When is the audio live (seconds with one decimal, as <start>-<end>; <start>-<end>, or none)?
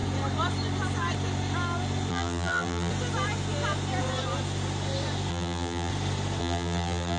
0.0-2.1; 2.9-5.3; 5.9-6.4